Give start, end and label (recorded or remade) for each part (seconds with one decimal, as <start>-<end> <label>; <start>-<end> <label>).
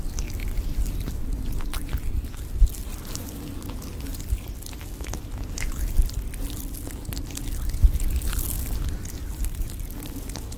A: 0.0-10.6 recorded